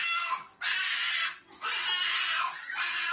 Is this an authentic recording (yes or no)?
yes